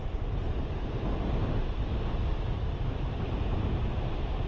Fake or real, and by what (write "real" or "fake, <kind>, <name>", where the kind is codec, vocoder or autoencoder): real